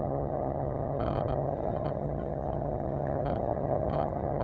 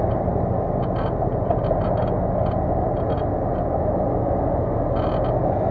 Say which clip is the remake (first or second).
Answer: first